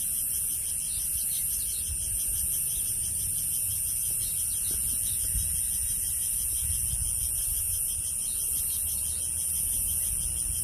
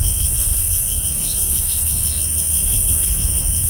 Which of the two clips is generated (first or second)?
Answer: second